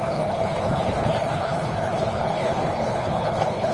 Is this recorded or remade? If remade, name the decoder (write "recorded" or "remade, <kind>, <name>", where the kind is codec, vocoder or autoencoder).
remade, codec, HILCodec